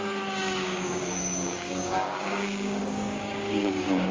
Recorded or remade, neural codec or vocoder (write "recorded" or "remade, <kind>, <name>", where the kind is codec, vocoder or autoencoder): remade, codec, DAC